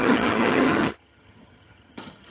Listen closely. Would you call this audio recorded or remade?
remade